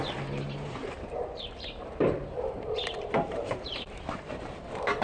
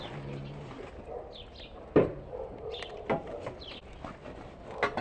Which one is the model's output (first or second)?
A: first